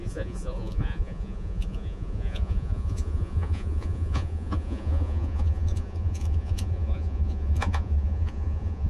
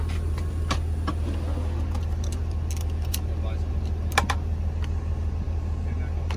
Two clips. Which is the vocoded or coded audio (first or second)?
first